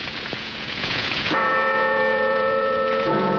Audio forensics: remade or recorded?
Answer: remade